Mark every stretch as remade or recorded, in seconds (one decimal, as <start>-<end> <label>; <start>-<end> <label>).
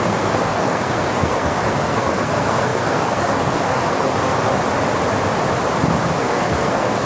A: 0.0-4.5 remade; 4.5-6.2 recorded; 6.2-7.1 remade